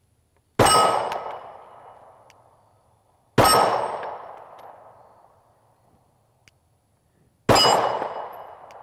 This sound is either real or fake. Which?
real